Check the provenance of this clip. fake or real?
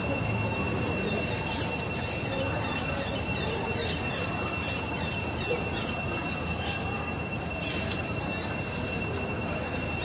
real